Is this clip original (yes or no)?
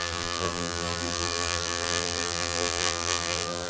no